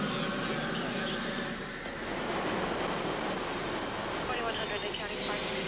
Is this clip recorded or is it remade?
recorded